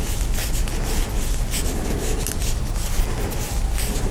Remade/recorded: recorded